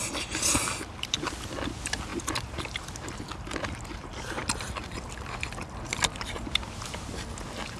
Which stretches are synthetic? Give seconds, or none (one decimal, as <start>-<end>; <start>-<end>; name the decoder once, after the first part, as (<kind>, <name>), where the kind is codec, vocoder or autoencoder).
none

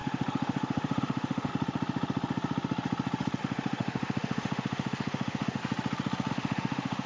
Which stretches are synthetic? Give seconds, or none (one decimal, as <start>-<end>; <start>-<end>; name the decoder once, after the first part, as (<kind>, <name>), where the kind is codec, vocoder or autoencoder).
0.0-1.5 (autoencoder, DAC-VAE); 3.4-5.6; 6.3-7.1